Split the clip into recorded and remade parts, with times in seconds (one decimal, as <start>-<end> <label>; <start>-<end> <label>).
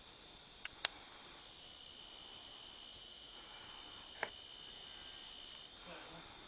0.0-2.9 recorded; 2.9-3.7 remade; 3.7-6.5 recorded